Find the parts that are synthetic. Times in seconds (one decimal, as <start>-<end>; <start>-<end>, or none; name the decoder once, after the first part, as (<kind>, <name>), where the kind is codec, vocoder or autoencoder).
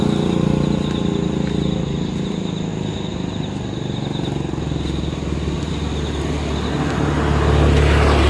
none